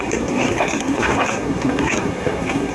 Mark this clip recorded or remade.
remade